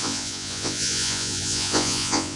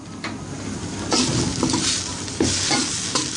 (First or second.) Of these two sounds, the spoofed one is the first